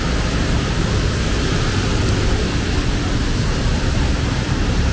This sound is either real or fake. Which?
real